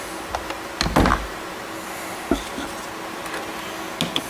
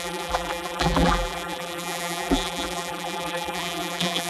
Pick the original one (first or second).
first